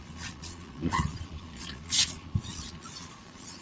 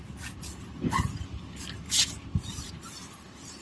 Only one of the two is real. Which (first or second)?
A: second